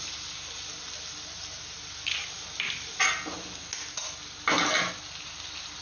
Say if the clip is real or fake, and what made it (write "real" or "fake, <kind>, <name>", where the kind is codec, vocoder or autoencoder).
real